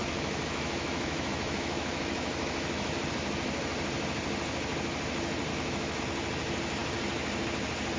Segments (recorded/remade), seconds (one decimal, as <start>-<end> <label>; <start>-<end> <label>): 0.0-3.0 remade; 3.0-5.5 recorded; 5.5-6.0 remade; 6.0-8.0 recorded